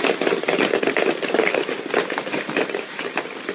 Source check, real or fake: real